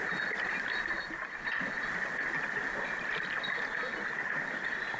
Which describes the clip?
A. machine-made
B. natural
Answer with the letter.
B